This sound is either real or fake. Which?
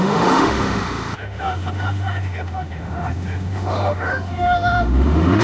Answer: fake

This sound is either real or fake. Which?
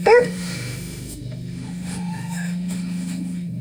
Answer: fake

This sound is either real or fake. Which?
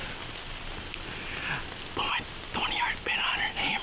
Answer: real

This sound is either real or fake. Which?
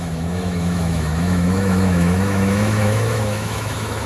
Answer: fake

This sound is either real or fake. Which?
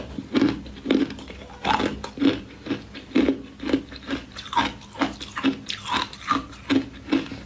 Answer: real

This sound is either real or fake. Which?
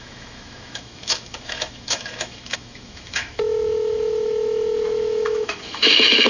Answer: fake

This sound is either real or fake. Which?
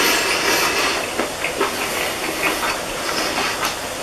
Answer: real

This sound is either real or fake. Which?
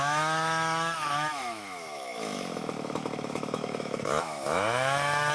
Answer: fake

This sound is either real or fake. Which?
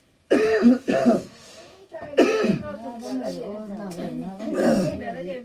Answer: fake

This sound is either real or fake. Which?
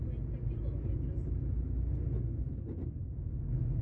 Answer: real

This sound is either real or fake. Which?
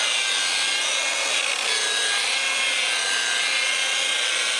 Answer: real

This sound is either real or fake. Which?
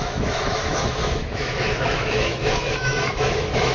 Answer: fake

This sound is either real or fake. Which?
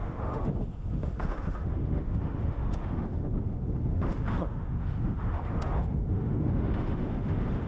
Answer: fake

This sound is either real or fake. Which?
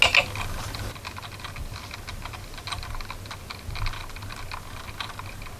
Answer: real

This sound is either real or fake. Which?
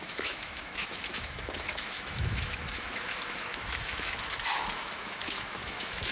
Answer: fake